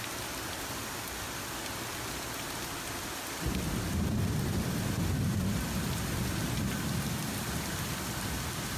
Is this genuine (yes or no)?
yes